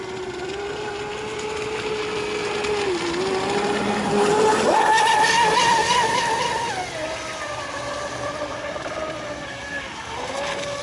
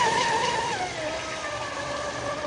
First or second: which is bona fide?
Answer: first